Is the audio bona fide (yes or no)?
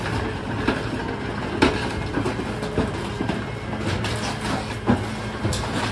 yes